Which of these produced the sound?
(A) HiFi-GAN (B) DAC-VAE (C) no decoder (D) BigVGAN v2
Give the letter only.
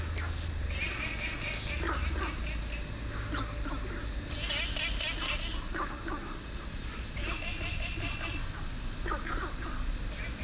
C